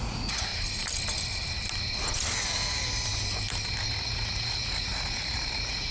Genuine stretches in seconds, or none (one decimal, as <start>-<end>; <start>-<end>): 0.5-4.0